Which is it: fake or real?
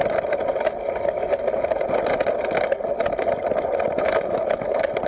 real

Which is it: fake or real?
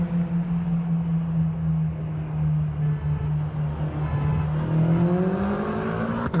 real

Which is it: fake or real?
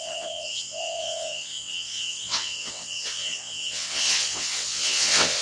fake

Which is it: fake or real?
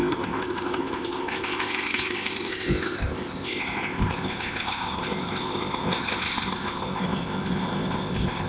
fake